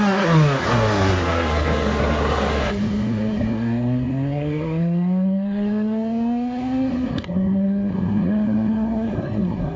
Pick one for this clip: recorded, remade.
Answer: remade